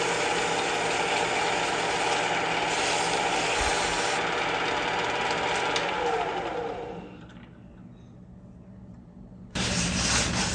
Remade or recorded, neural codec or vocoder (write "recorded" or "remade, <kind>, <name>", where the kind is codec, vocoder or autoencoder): recorded